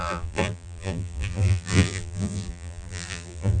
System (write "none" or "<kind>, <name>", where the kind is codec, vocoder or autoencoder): vocoder, BigVGAN v2